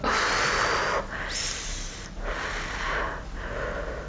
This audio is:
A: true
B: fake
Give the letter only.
A